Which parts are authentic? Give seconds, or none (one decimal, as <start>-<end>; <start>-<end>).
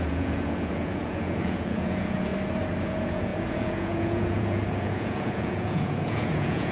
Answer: 2.3-2.8